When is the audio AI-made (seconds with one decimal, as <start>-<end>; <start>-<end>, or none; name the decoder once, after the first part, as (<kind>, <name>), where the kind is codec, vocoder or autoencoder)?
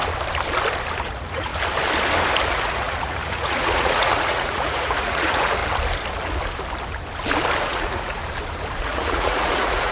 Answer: 1.0-1.5 (vocoder, Vocos); 2.5-5.6; 7.6-8.2; 8.8-9.9